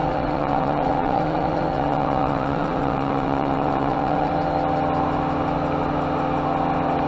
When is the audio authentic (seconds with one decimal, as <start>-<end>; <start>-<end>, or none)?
4.3-7.1